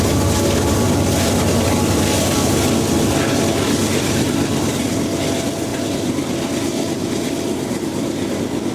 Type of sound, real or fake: real